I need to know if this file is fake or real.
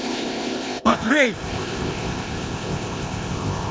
fake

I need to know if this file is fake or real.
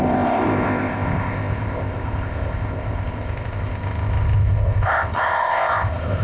fake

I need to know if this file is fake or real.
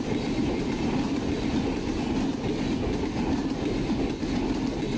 real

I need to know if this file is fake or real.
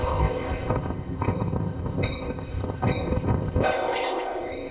fake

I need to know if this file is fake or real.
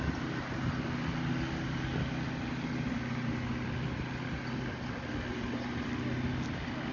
real